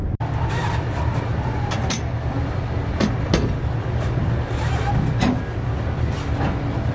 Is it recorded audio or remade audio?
recorded